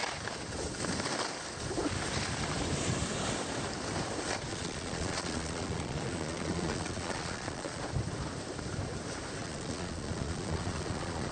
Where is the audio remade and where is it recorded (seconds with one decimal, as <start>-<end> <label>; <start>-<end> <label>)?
0.0-4.5 recorded; 4.5-7.8 remade; 7.8-9.4 recorded; 9.4-11.3 remade

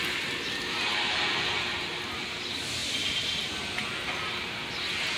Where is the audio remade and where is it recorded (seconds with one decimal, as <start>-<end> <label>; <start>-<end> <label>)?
0.0-5.2 recorded

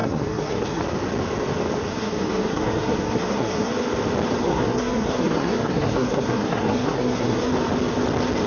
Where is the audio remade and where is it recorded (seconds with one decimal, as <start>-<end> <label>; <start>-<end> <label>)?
0.0-0.8 remade; 0.8-1.9 recorded; 1.9-3.7 remade; 3.7-4.4 recorded; 4.4-7.5 remade; 7.5-8.5 recorded

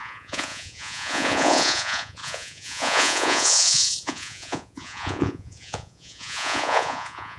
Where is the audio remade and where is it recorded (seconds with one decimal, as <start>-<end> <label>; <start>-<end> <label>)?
0.0-7.4 remade

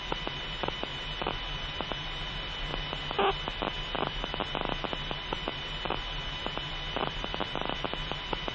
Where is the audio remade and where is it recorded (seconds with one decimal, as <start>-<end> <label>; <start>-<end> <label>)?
0.0-0.9 remade; 0.9-1.7 recorded; 1.7-2.7 remade; 2.7-3.3 recorded; 3.3-5.5 remade; 5.5-7.0 recorded; 7.0-8.5 remade

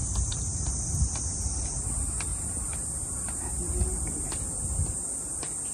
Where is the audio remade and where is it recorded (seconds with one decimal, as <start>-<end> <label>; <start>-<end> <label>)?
0.0-5.7 recorded

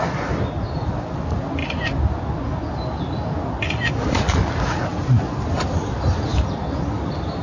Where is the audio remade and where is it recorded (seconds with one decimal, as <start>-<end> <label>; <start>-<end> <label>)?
0.0-7.4 recorded

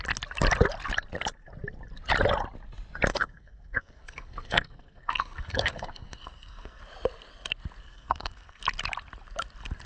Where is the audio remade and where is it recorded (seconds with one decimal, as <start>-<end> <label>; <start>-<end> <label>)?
0.0-3.1 recorded; 3.1-6.8 remade; 6.8-7.8 recorded; 7.8-8.6 remade; 8.6-9.9 recorded